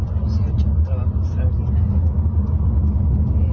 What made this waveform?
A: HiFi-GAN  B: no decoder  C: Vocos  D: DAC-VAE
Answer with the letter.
B